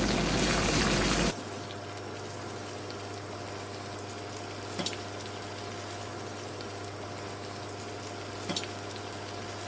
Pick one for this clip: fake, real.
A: real